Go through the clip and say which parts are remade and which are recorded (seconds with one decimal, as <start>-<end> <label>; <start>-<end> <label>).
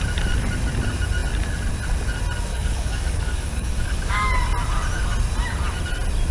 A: 0.0-2.5 recorded; 2.5-4.3 remade; 4.3-6.3 recorded